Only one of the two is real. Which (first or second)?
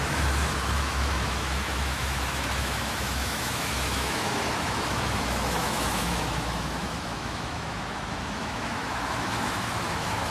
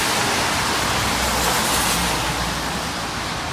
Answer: second